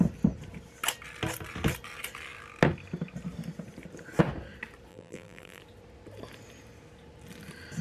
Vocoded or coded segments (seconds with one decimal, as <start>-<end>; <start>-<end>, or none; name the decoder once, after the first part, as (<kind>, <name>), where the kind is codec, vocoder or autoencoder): 4.9-5.6 (vocoder, BigVGAN v2)

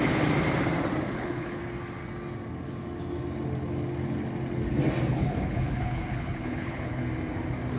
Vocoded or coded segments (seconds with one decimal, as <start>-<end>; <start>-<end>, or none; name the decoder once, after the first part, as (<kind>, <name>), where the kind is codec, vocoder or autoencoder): 1.1-1.6 (codec, HILCodec); 5.1-7.0

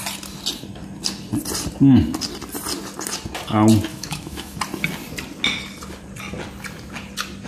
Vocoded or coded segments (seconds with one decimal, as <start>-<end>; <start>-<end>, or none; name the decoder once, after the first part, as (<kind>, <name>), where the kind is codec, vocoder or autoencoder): 3.9-4.6 (autoencoder, DAC-VAE)